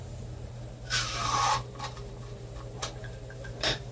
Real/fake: fake